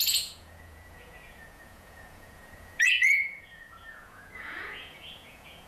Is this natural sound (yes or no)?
no